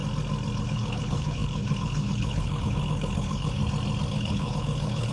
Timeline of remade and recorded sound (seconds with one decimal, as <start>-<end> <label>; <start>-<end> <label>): 0.0-0.6 recorded; 0.6-3.6 remade; 3.6-4.1 recorded; 4.1-5.1 remade

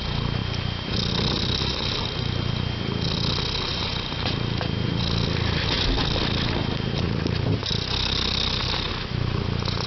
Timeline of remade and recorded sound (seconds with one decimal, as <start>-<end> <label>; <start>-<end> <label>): 0.0-9.9 recorded

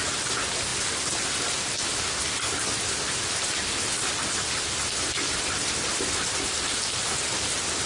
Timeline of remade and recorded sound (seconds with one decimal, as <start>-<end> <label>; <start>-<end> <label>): 0.0-7.9 recorded

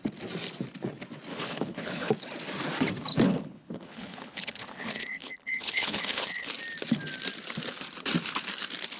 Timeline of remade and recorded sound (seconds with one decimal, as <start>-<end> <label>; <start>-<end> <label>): 0.0-1.3 recorded; 1.3-2.1 remade; 2.1-3.1 recorded; 3.1-6.5 remade; 6.5-9.0 recorded

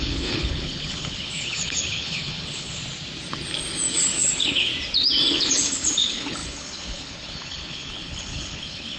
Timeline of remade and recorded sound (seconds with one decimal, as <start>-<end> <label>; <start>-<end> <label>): 0.0-2.8 remade; 2.8-3.9 recorded; 3.9-4.7 remade; 4.7-5.3 recorded; 5.3-9.0 remade

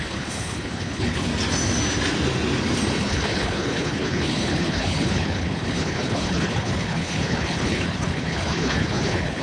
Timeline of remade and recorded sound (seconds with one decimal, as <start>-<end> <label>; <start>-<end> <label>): 0.0-1.3 remade; 1.3-3.0 recorded; 3.0-9.4 remade

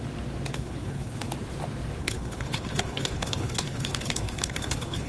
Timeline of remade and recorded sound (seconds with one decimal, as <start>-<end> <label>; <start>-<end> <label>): 0.0-0.5 recorded; 0.5-1.3 remade; 1.3-2.0 recorded; 2.0-5.1 remade